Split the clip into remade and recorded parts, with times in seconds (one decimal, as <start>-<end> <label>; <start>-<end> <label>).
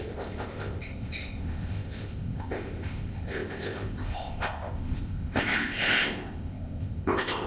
0.0-7.5 remade